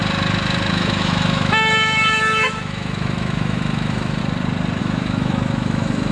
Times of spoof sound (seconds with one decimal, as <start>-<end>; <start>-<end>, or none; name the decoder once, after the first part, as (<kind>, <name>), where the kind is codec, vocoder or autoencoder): 0.7-4.2 (autoencoder, DAC-VAE); 4.8-6.1